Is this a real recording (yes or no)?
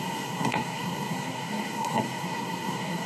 no